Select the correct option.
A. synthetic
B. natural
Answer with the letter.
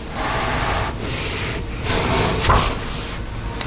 B